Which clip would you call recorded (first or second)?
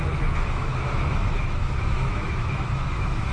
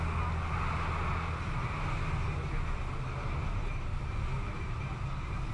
second